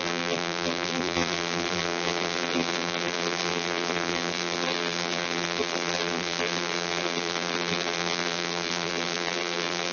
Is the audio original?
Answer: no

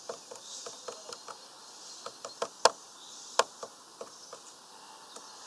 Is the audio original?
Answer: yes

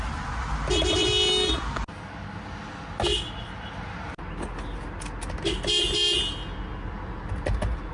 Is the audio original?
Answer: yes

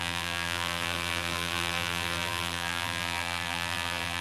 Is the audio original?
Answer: no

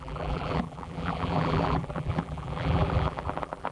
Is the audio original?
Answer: no